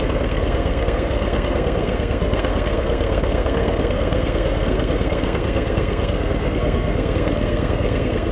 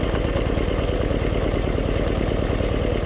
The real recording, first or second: second